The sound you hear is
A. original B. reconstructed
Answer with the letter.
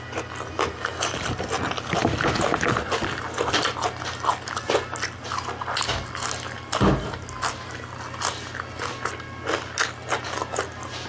A